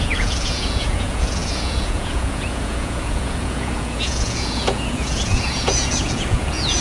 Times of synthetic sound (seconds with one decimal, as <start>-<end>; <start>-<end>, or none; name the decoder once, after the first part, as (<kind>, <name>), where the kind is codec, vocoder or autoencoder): 0.0-6.8 (vocoder, Vocos)